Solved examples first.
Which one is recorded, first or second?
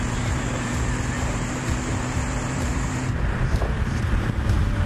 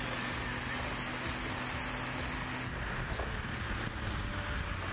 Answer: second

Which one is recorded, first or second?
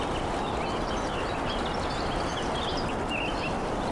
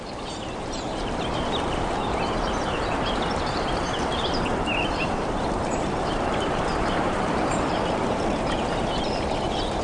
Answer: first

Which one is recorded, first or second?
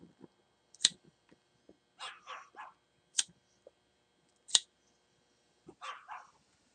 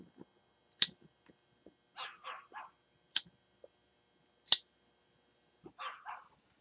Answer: second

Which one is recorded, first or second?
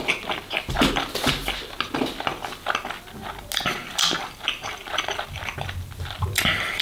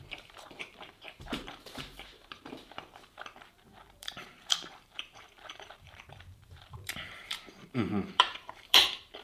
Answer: first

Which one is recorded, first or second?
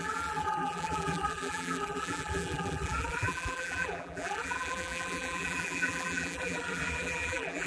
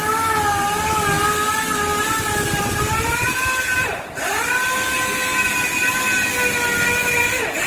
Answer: second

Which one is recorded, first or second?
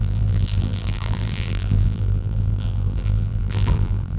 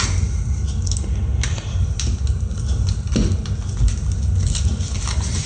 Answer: second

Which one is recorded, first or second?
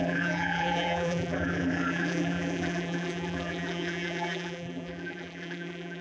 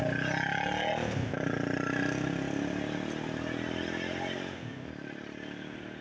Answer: second